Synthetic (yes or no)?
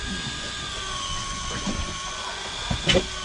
yes